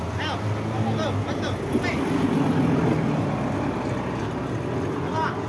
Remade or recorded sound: recorded